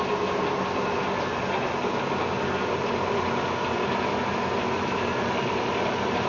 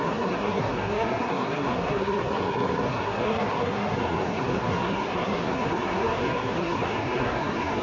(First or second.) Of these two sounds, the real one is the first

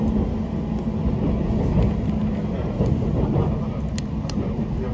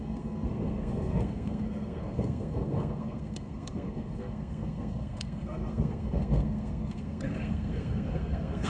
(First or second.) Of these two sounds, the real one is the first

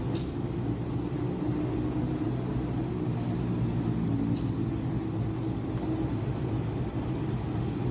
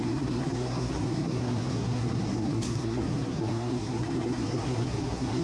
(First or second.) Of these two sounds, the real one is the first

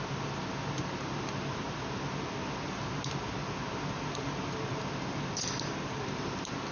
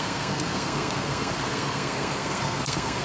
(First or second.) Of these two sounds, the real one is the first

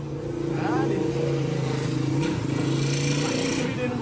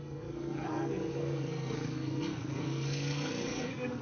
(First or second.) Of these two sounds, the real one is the first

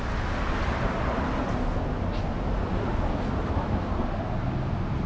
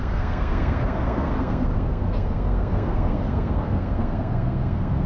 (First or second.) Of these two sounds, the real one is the first